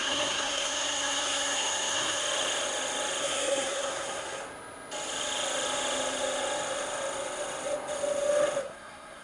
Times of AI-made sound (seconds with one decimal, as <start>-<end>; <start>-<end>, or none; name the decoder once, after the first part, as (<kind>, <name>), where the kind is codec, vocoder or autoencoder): 0.0-2.2 (codec, SNAC); 3.2-4.4; 8.6-9.2